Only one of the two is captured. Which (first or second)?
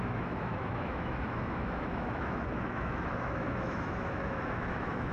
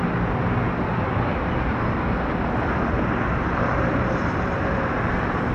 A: second